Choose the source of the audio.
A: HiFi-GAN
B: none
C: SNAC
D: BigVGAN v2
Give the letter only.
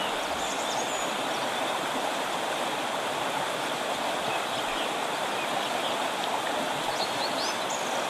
B